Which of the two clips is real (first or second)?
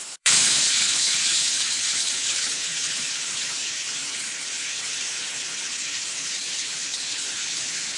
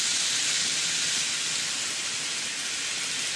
second